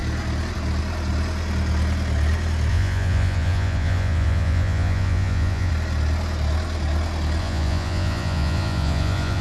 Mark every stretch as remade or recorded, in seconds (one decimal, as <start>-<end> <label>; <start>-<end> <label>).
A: 0.0-2.7 recorded; 2.7-5.7 remade; 5.7-7.4 recorded; 7.4-9.4 remade